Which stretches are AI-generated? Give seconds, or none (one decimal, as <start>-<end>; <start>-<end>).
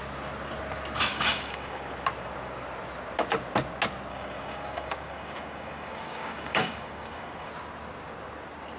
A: 1.1-1.9; 4.1-7.5